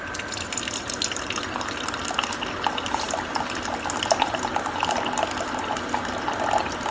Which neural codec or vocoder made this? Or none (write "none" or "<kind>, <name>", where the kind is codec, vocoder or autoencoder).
none